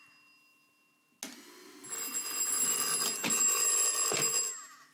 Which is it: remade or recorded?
recorded